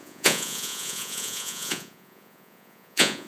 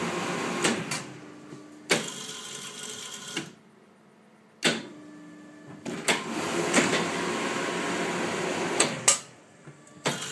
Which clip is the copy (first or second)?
first